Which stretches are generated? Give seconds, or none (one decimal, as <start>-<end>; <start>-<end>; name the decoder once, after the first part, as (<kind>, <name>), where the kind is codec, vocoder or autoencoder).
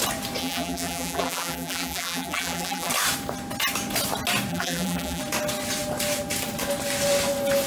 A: 0.4-2.9 (vocoder, BigVGAN v2); 4.5-5.2